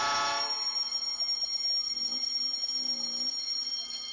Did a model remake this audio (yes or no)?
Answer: no